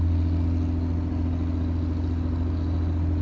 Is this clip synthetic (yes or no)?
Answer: no